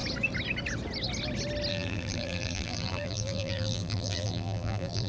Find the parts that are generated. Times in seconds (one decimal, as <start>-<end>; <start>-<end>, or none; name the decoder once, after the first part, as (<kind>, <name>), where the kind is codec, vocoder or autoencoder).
1.7-5.1 (vocoder, BigVGAN v2)

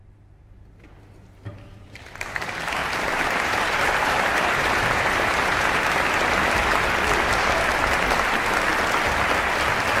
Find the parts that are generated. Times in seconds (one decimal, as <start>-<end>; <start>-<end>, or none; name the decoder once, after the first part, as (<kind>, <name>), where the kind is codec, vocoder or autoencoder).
2.8-5.9 (vocoder, BigVGAN v2)

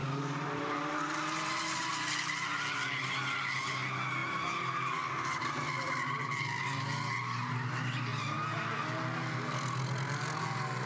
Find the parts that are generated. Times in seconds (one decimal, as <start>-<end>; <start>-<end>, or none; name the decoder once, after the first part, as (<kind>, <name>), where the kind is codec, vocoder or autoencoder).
0.0-1.1 (vocoder, BigVGAN v2)